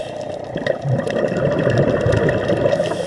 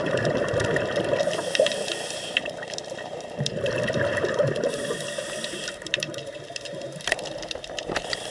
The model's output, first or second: second